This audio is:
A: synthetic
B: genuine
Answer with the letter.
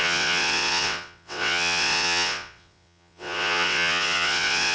A